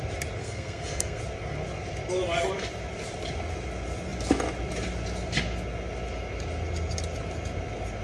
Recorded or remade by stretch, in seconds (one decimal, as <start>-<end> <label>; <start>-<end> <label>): 0.0-0.4 recorded; 0.4-1.2 remade; 1.2-8.0 recorded